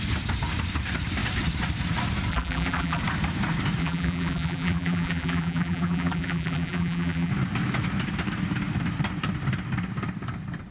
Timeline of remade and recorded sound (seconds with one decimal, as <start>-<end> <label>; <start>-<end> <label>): 0.0-2.3 recorded; 2.3-3.0 remade; 3.0-3.8 recorded; 3.8-7.3 remade; 7.3-10.7 recorded